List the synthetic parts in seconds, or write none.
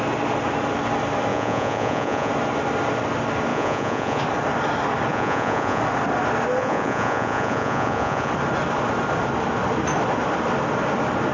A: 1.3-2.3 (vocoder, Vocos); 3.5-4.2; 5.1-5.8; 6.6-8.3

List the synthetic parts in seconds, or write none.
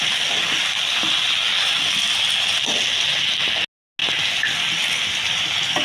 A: none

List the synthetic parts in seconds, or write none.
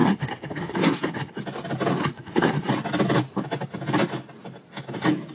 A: 0.0-1.4 (codec, SNAC); 2.0-2.7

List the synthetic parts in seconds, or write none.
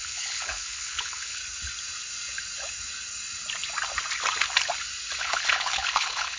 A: 0.0-1.4 (codec, HILCodec); 5.2-6.4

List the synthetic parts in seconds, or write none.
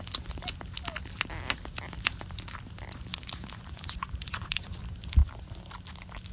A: 3.1-4.8 (vocoder, Vocos)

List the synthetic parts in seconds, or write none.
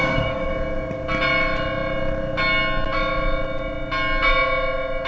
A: 0.0-0.5 (codec, DAC)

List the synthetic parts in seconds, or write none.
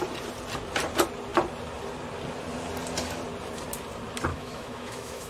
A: 4.3-5.3 (autoencoder, DAC-VAE)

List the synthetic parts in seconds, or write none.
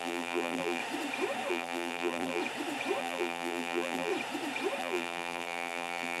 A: 0.0-0.8 (vocoder, BigVGAN v2); 1.5-2.4; 3.0-4.1; 4.8-6.2